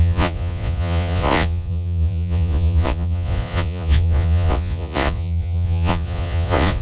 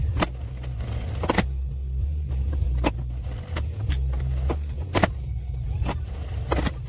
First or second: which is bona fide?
second